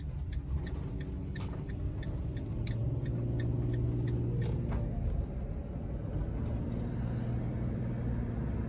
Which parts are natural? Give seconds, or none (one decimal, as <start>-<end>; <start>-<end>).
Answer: 0.0-1.2; 1.7-8.7